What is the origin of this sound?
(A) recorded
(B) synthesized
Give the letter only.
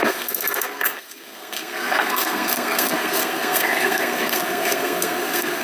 B